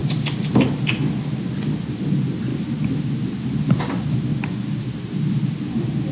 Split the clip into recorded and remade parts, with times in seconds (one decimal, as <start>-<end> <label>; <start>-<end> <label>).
0.0-0.5 remade; 0.5-6.1 recorded